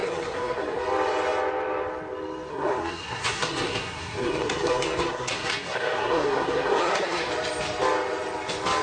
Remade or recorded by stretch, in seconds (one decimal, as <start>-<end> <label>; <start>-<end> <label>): 0.0-0.8 remade; 0.8-2.5 recorded; 2.5-7.3 remade; 7.3-8.8 recorded